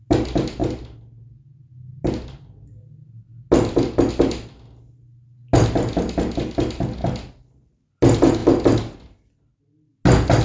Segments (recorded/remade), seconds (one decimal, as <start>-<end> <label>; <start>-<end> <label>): 0.0-10.4 recorded